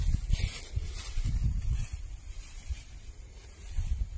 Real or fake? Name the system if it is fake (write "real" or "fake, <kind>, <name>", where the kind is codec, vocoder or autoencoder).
real